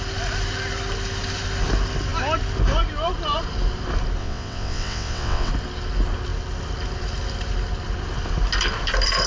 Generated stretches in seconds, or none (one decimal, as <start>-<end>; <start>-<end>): 4.2-5.5